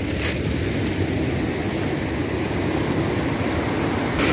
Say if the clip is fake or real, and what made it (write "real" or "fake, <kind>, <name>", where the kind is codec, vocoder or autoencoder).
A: real